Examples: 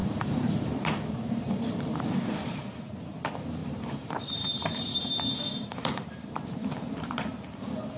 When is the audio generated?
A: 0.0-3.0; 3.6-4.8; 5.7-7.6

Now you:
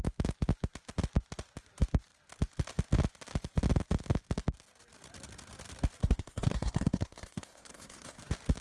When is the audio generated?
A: 6.0-8.2

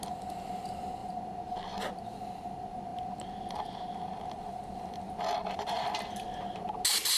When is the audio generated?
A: none